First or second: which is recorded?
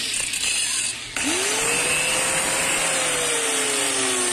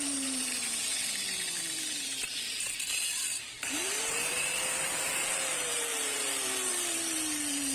first